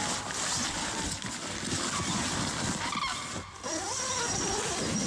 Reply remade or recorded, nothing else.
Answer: recorded